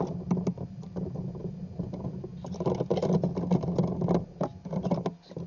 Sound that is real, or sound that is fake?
real